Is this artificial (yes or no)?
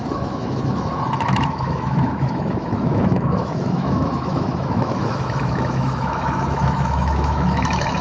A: yes